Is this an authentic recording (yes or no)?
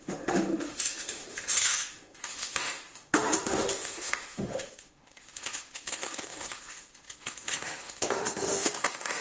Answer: no